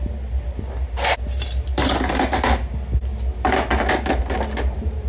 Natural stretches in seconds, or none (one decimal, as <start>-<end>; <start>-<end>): 0.0-5.1

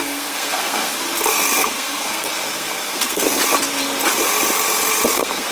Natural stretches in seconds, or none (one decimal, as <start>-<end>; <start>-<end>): 1.0-1.6; 3.4-5.1

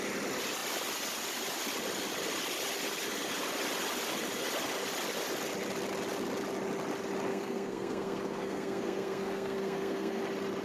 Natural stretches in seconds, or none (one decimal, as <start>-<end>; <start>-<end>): 0.0-7.3; 10.2-10.6

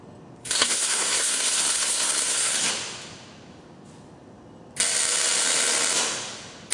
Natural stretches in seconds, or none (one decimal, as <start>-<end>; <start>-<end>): 0.0-0.4; 2.7-6.7

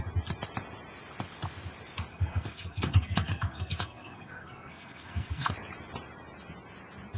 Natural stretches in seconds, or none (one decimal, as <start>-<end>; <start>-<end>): 0.0-2.1; 5.5-7.2

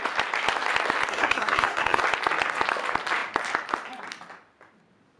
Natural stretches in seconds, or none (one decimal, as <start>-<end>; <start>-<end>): 0.0-1.1; 2.0-5.2